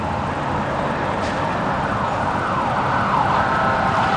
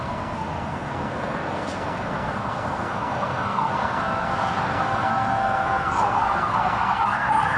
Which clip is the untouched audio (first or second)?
first